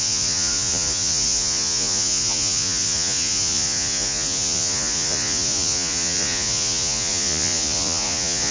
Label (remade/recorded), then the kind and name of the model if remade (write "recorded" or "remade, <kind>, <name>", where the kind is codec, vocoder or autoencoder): remade, vocoder, Vocos